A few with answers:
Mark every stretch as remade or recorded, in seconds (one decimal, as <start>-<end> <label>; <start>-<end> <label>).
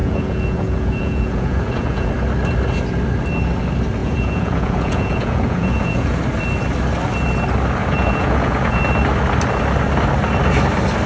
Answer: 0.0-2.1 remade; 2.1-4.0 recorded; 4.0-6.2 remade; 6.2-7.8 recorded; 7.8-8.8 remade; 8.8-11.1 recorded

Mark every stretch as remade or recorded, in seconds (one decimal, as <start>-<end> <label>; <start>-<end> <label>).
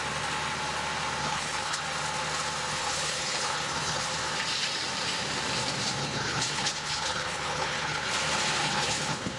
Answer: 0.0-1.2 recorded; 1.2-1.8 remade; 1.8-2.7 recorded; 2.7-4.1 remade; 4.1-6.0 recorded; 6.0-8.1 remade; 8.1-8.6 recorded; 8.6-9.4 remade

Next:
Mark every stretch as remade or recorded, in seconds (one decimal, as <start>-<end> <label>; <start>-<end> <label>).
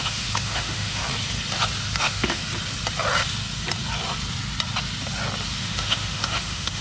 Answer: 0.0-1.0 remade; 1.0-2.0 recorded; 2.0-2.4 remade; 2.4-5.6 recorded; 5.6-6.8 remade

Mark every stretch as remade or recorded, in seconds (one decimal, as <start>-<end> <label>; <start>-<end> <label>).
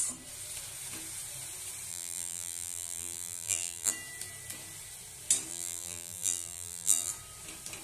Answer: 0.0-1.9 recorded; 1.9-3.9 remade; 3.9-5.5 recorded; 5.5-7.1 remade; 7.1-7.8 recorded